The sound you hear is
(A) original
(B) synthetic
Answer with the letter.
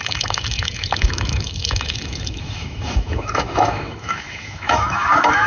B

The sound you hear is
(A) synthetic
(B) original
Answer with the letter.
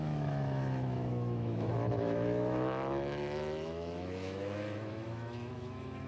A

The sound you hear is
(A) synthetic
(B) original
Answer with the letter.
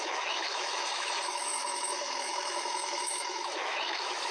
A